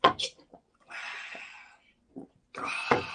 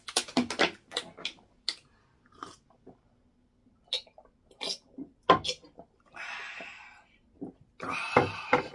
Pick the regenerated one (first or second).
first